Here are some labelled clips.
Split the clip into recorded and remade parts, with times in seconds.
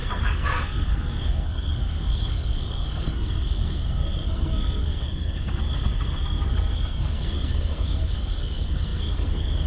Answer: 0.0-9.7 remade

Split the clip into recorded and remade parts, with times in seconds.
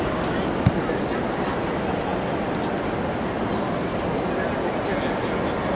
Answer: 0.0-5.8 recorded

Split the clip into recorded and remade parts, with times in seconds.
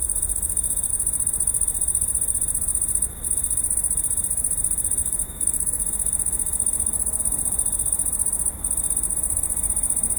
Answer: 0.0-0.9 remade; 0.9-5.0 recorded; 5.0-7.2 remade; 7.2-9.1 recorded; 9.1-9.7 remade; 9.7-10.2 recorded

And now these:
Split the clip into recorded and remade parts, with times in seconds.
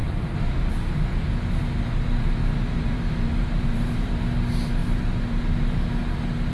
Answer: 0.0-0.7 remade; 0.7-2.4 recorded; 2.4-4.1 remade; 4.1-4.8 recorded; 4.8-5.4 remade; 5.4-6.5 recorded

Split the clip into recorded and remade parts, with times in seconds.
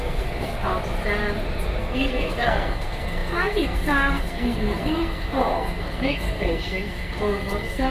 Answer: 0.0-0.7 remade; 0.7-1.8 recorded; 1.8-7.9 remade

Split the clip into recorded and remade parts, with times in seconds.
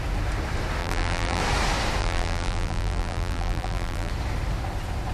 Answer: 0.0-0.8 recorded; 0.8-1.4 remade; 1.4-2.0 recorded; 2.0-4.1 remade; 4.1-5.1 recorded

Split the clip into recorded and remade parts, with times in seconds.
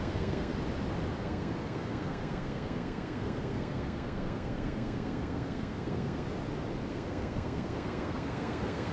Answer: 0.0-0.5 remade; 0.5-1.2 recorded; 1.2-6.3 remade; 6.3-6.9 recorded; 6.9-8.9 remade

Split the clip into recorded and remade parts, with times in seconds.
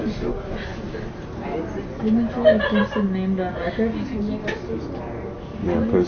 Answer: 0.0-6.1 recorded